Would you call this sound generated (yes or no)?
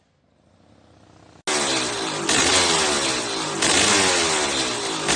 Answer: no